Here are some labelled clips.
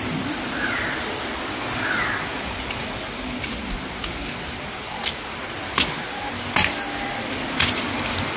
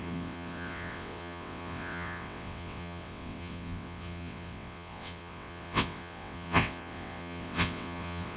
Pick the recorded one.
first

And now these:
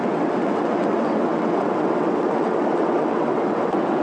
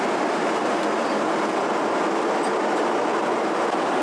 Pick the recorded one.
second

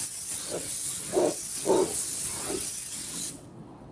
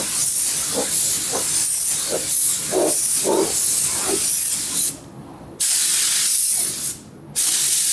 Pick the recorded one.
second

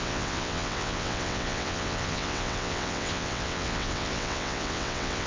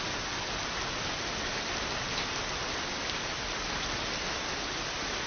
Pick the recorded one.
second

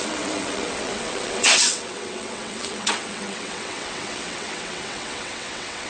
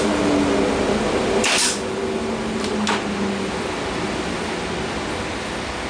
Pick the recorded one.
second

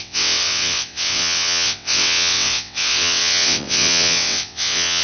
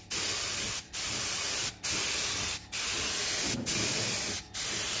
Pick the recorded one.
second